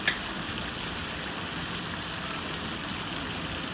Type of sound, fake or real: real